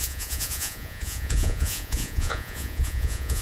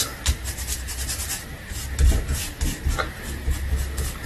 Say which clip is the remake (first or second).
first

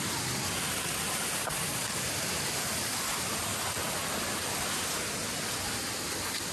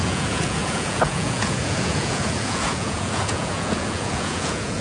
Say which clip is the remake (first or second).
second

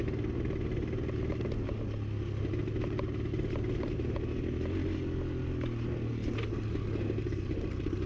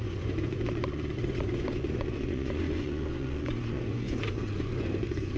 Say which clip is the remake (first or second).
second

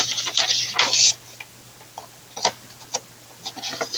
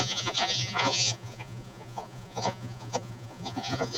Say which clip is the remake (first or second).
second